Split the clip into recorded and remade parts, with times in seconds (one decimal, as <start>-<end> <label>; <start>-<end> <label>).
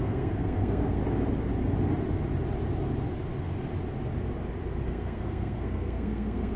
0.0-1.0 remade; 1.0-4.8 recorded; 4.8-6.6 remade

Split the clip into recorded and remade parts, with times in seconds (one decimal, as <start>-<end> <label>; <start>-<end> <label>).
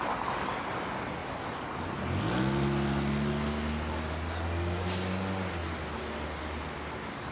0.0-7.3 recorded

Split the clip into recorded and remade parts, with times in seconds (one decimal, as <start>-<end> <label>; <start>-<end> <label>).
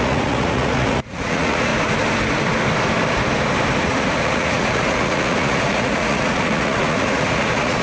0.0-1.7 remade; 1.7-3.8 recorded; 3.8-7.8 remade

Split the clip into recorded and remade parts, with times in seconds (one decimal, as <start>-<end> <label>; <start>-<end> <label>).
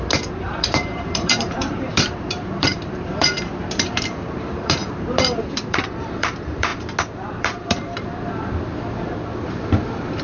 0.0-6.7 remade; 6.7-7.4 recorded; 7.4-8.1 remade; 8.1-9.5 recorded; 9.5-10.2 remade